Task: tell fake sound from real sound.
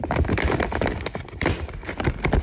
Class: real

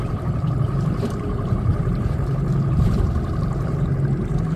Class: fake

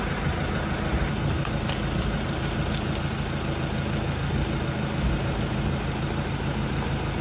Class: real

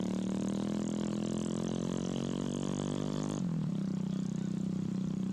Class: real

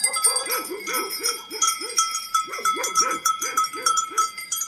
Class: fake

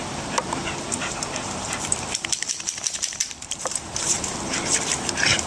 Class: fake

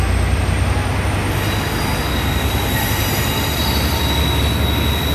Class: real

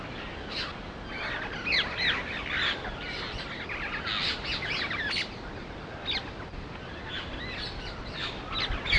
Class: real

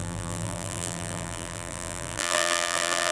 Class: fake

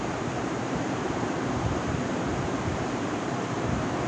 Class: fake